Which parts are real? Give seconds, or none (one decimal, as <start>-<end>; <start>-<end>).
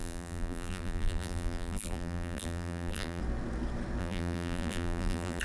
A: 3.2-4.0